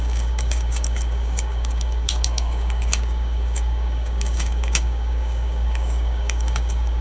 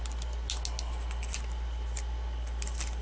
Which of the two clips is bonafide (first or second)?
second